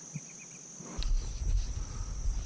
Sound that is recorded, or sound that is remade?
recorded